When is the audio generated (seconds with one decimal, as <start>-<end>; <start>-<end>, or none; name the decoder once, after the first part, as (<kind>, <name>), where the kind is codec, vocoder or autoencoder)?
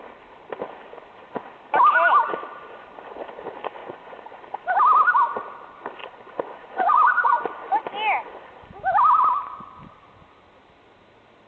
3.8-4.4 (vocoder, Vocos); 6.0-7.4